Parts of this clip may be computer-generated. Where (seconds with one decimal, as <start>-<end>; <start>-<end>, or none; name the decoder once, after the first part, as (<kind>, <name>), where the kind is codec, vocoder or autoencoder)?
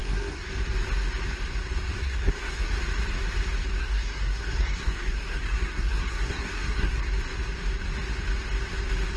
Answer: 0.0-0.5 (codec, SNAC); 2.0-2.7; 3.8-7.1